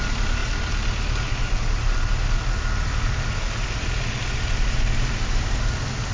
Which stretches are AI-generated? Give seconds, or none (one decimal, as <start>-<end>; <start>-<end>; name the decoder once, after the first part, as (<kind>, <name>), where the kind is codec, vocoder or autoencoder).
none